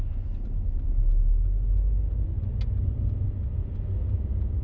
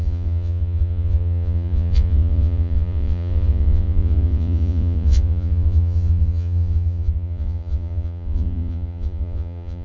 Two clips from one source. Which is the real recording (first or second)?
first